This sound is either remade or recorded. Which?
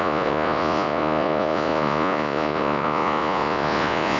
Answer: remade